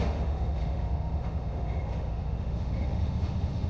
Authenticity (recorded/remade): remade